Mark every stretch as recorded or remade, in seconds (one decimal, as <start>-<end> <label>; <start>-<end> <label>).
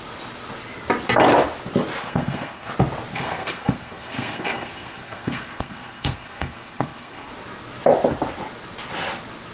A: 0.0-2.0 recorded; 2.0-2.7 remade; 2.7-3.1 recorded; 3.1-7.3 remade; 7.3-9.5 recorded